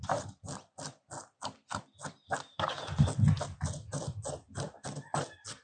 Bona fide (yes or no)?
yes